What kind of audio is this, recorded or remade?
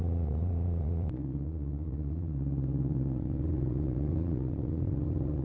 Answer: remade